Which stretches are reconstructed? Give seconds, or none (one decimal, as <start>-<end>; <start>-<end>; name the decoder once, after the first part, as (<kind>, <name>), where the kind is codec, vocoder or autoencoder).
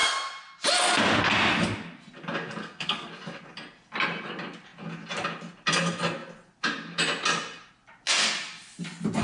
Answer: 2.6-3.1 (codec, SNAC)